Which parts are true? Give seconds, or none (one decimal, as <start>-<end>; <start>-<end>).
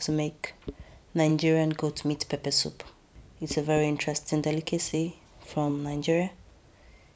0.0-4.9; 5.7-7.2